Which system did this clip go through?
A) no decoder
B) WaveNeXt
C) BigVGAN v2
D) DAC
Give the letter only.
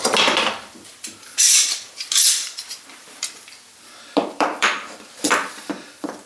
C